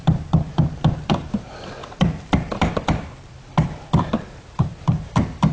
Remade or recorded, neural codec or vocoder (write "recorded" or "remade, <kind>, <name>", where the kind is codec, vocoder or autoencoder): remade, vocoder, BigVGAN v2